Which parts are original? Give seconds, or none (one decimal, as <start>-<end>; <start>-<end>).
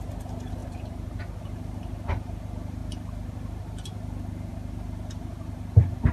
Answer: 0.0-0.6; 1.2-6.1